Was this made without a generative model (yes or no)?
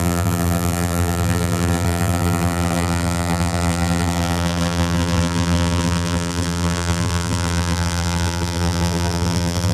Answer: no